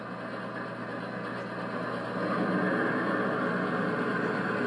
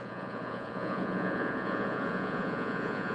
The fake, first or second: second